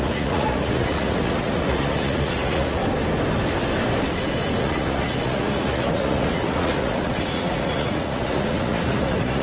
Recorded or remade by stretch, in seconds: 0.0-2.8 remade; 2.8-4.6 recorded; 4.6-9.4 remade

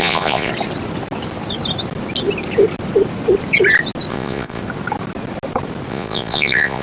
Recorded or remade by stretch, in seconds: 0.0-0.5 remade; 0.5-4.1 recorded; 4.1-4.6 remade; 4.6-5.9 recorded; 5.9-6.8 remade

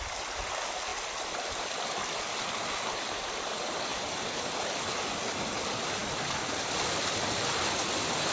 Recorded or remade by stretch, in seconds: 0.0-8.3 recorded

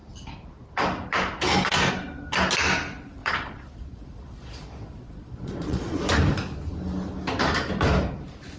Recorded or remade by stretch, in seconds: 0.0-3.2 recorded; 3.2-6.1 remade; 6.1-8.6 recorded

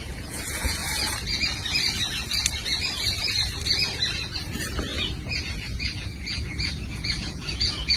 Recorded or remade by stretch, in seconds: 0.0-0.8 remade; 0.8-4.5 recorded; 4.5-8.0 remade

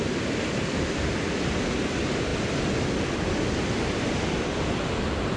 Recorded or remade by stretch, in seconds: 0.0-5.4 recorded